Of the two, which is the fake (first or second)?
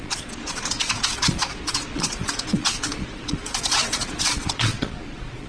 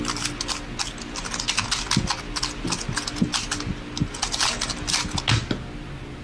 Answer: first